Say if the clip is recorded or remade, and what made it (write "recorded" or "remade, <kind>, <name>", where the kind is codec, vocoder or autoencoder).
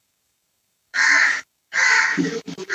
remade, codec, DAC